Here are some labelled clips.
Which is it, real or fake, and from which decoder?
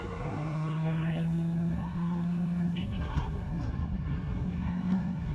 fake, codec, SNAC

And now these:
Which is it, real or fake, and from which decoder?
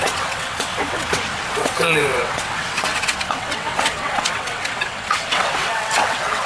fake, vocoder, WaveNeXt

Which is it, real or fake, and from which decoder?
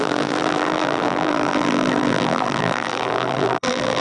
fake, vocoder, BigVGAN v2